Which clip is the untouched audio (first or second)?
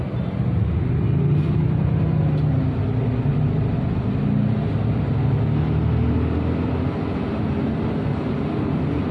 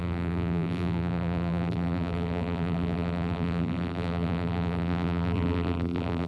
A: first